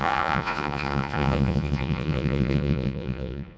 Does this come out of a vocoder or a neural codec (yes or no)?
yes